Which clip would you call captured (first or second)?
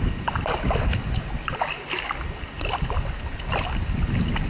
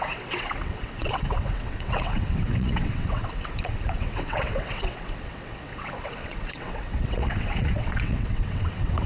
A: first